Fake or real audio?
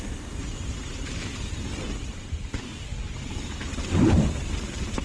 fake